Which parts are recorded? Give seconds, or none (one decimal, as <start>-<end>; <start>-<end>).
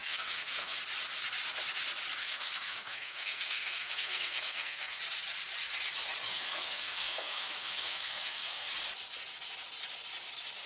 0.8-2.2; 5.0-6.3; 8.7-10.7